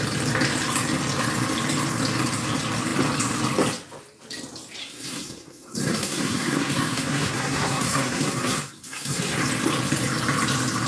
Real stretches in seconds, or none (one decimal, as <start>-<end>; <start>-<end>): 0.0-4.8; 9.4-10.9